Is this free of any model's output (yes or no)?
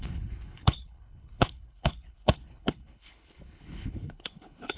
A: no